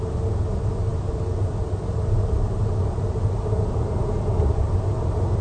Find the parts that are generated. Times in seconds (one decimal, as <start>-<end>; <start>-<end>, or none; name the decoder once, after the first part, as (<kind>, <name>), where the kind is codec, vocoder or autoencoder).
none